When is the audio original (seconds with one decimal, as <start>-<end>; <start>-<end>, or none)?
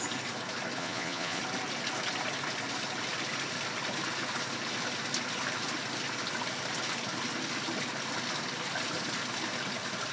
0.0-0.8; 1.4-10.1